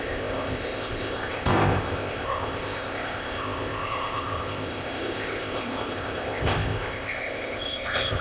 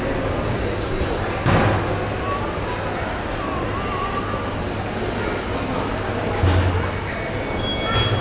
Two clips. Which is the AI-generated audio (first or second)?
first